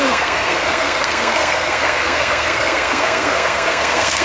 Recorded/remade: remade